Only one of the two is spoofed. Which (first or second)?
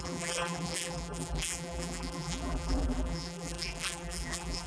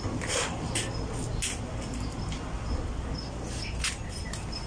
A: first